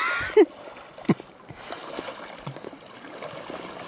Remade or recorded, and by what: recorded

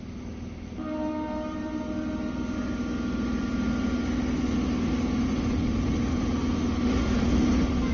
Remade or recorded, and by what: recorded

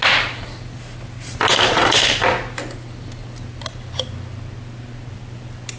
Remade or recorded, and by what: recorded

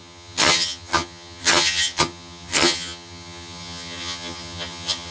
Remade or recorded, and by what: remade, vocoder, HiFi-GAN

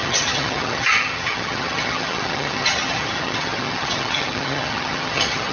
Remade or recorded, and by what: remade, vocoder, HiFi-GAN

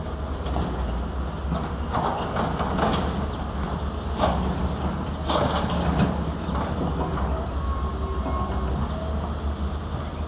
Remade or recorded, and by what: recorded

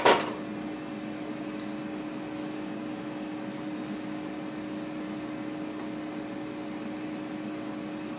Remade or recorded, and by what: recorded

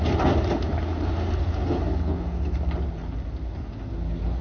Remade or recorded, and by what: recorded